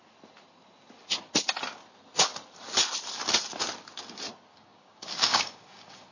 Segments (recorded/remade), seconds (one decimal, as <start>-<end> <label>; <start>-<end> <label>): 0.0-4.5 recorded; 4.5-6.1 remade

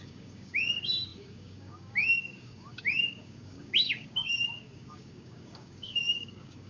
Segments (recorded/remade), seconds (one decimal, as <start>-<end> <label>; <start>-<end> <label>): 0.0-6.7 remade